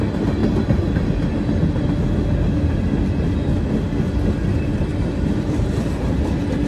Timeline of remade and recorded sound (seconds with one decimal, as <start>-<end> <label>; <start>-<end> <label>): 0.0-4.9 recorded; 4.9-6.2 remade; 6.2-6.7 recorded